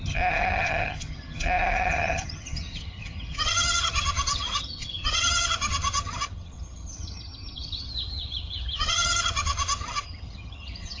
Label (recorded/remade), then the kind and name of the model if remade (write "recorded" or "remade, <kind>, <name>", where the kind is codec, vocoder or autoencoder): remade, vocoder, HiFi-GAN